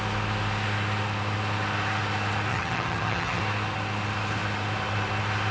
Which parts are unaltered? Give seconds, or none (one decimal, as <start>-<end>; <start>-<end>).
0.0-2.5; 3.4-5.5